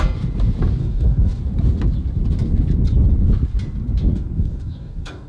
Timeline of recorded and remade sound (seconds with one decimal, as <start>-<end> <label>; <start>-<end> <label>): 0.0-0.8 recorded; 0.8-1.4 remade; 1.4-4.1 recorded; 4.1-5.3 remade